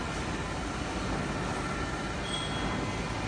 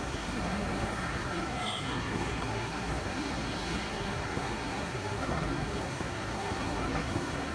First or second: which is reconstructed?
second